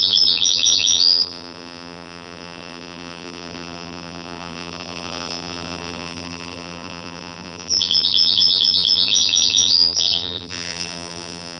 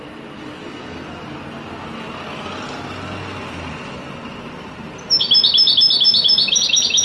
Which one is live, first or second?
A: second